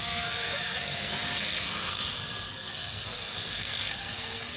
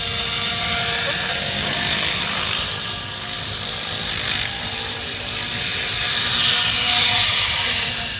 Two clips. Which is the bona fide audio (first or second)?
second